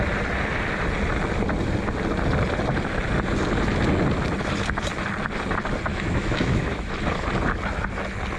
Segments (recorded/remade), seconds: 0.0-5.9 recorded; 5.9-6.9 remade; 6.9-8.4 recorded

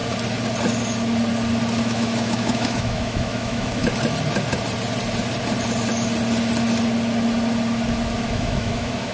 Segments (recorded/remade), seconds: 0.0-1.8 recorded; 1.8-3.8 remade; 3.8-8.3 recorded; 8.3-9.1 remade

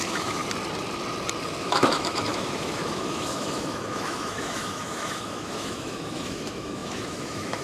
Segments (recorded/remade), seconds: 0.0-0.4 remade; 0.4-1.6 recorded; 1.6-7.6 remade

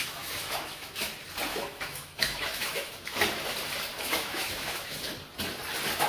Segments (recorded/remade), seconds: 0.0-1.1 remade; 1.1-1.5 recorded; 1.5-3.2 remade; 3.2-3.9 recorded; 3.9-5.1 remade; 5.1-6.1 recorded

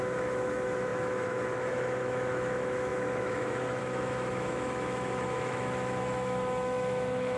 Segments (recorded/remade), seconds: 0.0-7.4 remade

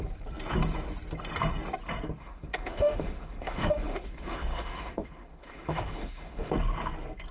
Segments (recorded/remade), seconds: 0.0-2.2 recorded; 2.2-6.5 remade; 6.5-7.3 recorded